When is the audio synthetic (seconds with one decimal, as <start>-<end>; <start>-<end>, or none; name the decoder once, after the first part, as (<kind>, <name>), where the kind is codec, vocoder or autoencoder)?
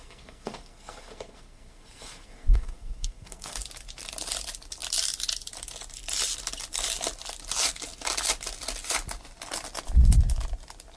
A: 0.0-3.6 (codec, SNAC)